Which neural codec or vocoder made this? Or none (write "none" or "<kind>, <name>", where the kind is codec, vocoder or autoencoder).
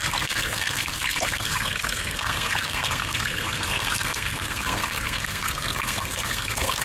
codec, SNAC